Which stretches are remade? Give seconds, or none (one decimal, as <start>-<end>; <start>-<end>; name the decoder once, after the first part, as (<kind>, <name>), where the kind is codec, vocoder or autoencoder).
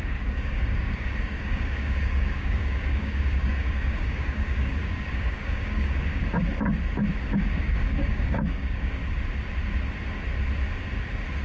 0.0-6.2 (codec, DAC); 7.2-9.0